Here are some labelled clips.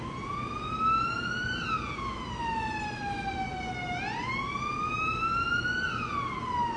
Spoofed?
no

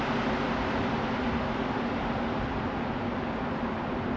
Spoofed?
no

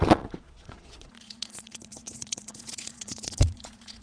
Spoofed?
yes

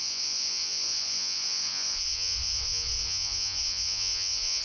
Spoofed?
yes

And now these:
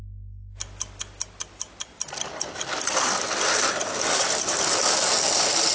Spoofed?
no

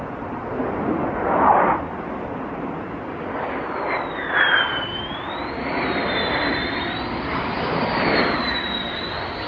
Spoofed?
no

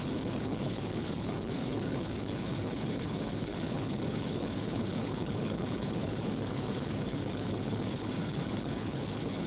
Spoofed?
yes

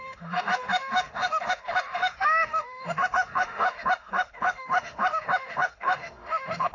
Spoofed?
yes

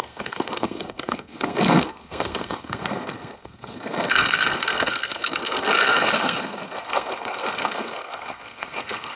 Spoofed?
yes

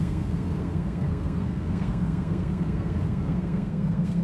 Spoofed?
yes